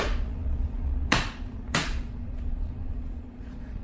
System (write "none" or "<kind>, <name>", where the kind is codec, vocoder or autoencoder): vocoder, Vocos